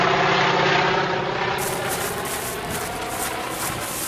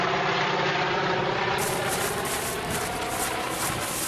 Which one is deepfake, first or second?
second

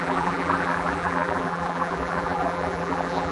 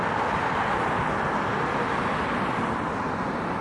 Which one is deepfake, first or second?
first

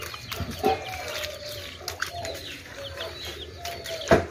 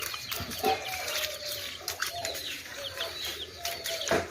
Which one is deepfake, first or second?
second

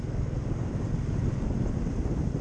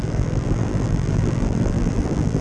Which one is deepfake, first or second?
second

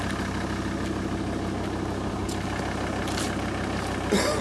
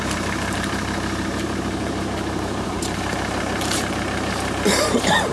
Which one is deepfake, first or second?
second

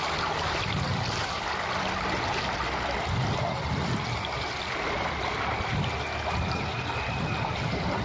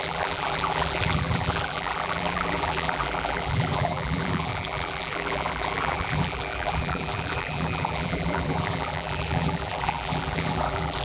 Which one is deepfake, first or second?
second